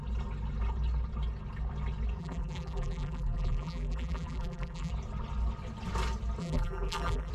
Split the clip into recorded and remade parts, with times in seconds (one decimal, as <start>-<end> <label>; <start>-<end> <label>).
0.0-2.2 recorded; 2.2-4.9 remade; 4.9-6.4 recorded; 6.4-7.3 remade

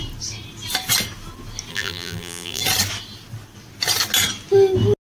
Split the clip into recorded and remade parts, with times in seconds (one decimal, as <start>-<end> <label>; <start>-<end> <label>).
0.0-1.7 recorded; 1.7-2.6 remade; 2.6-5.0 recorded

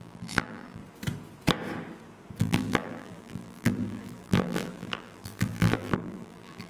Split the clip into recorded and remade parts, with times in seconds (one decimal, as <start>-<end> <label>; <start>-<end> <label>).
0.0-0.8 remade; 0.8-2.4 recorded; 2.4-6.7 remade